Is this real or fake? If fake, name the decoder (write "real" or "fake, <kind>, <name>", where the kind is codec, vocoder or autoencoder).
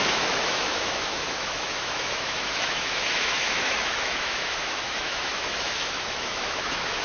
fake, autoencoder, DAC-VAE